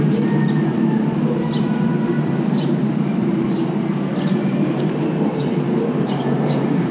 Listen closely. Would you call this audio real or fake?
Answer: fake